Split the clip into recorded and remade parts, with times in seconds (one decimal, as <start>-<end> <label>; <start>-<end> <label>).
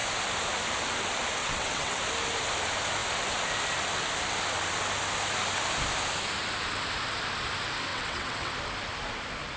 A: 0.0-1.4 recorded; 1.4-2.0 remade; 2.0-7.9 recorded; 7.9-8.5 remade; 8.5-9.6 recorded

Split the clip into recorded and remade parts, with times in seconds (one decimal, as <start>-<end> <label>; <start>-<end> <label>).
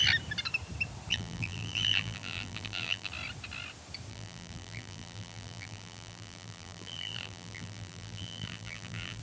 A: 0.0-1.1 recorded; 1.1-3.1 remade; 3.1-4.1 recorded; 4.1-9.2 remade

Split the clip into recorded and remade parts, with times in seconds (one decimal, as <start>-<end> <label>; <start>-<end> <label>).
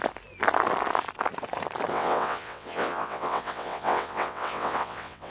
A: 0.0-1.9 recorded; 1.9-5.3 remade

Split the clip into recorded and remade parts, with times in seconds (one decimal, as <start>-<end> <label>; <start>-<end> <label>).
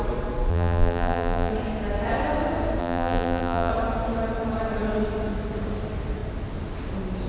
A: 0.0-0.5 recorded; 0.5-1.5 remade; 1.5-2.8 recorded; 2.8-3.7 remade; 3.7-7.3 recorded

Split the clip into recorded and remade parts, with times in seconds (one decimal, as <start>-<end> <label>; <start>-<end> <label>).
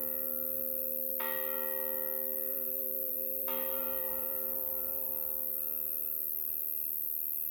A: 0.0-2.5 recorded; 2.5-5.1 remade; 5.1-7.5 recorded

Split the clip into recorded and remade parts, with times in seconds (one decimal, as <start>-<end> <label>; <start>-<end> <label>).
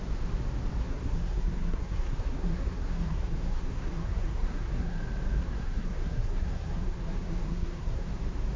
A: 0.0-0.8 recorded; 0.8-5.0 remade; 5.0-5.4 recorded; 5.4-8.1 remade; 8.1-8.6 recorded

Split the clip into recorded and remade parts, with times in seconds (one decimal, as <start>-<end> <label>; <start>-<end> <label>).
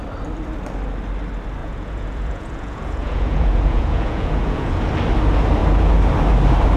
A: 0.0-1.6 recorded; 1.6-4.9 remade; 4.9-6.8 recorded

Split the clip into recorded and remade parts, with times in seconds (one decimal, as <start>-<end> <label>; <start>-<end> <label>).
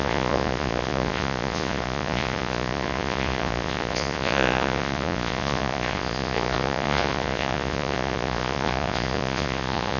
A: 0.0-10.0 remade